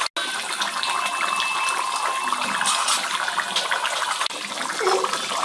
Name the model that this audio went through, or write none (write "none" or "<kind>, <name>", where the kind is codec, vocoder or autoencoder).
none